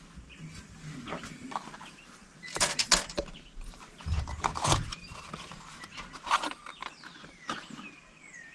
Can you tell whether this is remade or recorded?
recorded